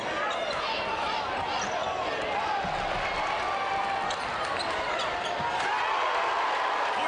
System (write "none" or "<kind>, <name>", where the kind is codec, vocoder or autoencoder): none